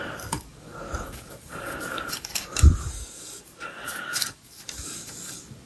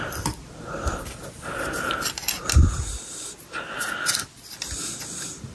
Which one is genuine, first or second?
second